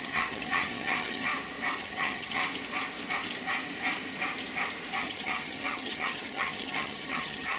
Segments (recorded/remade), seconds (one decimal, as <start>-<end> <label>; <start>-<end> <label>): 0.0-1.3 remade; 1.3-1.8 recorded; 1.8-2.4 remade; 2.4-5.0 recorded; 5.0-7.6 remade